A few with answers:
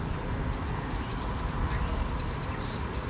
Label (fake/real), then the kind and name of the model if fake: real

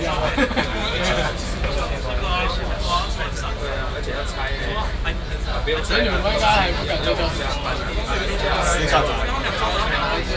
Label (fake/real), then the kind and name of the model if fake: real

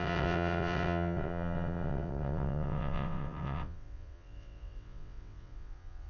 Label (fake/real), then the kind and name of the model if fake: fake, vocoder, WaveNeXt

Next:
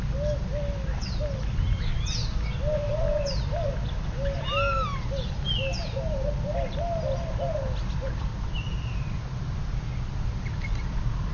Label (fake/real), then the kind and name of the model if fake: real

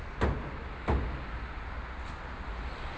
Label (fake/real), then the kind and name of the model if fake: real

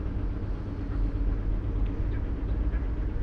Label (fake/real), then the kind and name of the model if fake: real